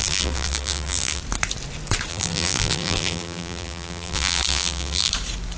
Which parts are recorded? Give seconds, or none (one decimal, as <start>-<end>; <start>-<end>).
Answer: 1.2-2.1; 5.1-5.6